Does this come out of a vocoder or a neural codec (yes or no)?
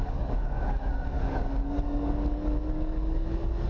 yes